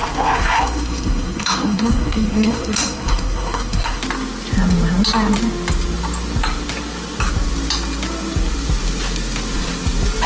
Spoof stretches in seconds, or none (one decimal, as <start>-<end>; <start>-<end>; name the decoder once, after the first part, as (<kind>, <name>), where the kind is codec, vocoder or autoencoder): 0.0-4.0 (codec, SNAC)

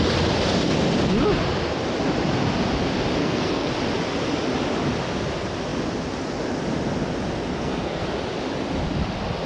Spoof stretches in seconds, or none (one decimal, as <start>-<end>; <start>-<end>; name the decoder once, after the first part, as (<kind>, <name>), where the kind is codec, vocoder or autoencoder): 3.2-3.7 (codec, SNAC); 7.5-8.0